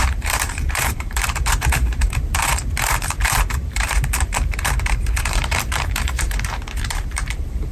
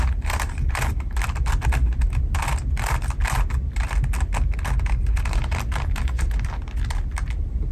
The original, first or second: second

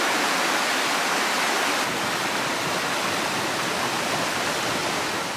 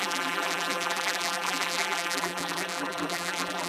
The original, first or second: first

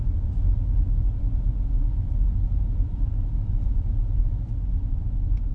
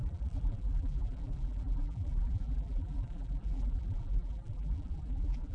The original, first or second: first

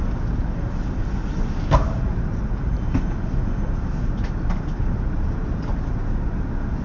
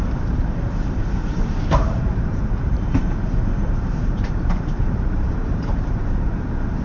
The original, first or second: first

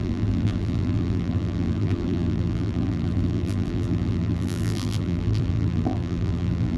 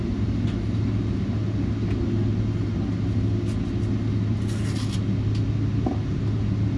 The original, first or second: second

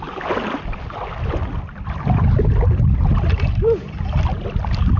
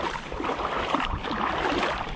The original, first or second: first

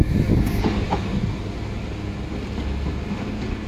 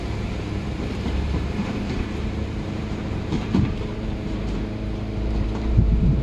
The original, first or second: first